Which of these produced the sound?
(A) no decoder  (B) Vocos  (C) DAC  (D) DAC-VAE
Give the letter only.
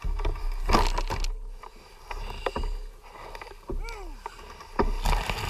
A